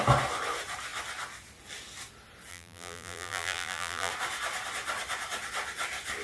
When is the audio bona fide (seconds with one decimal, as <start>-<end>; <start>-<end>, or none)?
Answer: 0.0-2.5; 4.1-6.2